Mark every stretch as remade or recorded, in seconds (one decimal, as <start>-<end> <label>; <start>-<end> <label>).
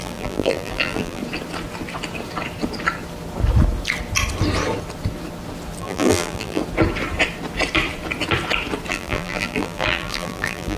0.0-1.2 remade; 1.2-5.8 recorded; 5.8-6.6 remade; 6.6-8.9 recorded; 8.9-10.8 remade